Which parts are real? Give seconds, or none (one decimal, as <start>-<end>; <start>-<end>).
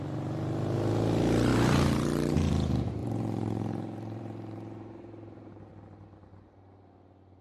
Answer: 0.0-1.5; 2.5-3.0; 5.7-7.4